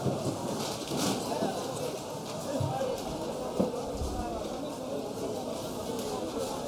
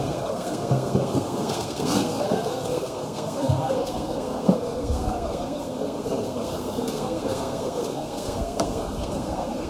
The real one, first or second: first